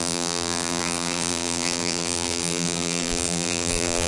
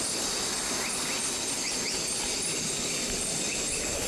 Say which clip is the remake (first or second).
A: first